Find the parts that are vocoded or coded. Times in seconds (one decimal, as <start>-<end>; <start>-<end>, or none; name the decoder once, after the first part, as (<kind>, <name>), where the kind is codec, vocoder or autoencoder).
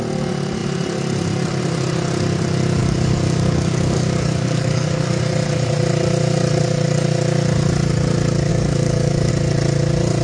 2.8-5.2 (codec, DAC); 8.5-9.3